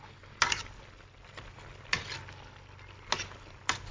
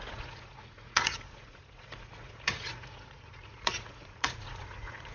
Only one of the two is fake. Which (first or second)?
second